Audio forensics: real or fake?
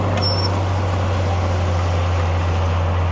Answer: real